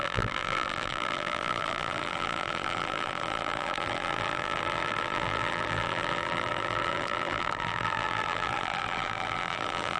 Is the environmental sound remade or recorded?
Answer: remade